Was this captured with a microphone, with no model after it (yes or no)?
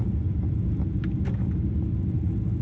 yes